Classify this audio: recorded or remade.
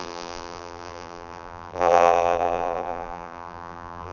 remade